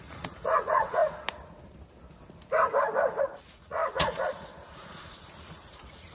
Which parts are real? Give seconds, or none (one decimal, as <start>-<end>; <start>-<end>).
1.0-3.2